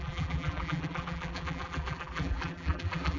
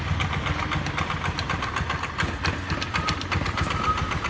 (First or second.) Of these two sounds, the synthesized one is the first